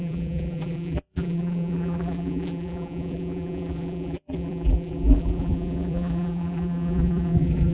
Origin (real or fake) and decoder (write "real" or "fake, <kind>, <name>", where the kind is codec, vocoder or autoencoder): fake, vocoder, BigVGAN v2